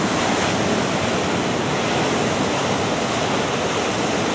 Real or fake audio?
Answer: real